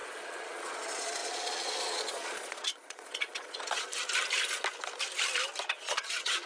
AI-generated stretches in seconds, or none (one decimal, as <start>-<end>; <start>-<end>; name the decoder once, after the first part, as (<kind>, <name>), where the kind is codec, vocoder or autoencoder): 0.0-3.9 (vocoder, Vocos); 5.6-6.5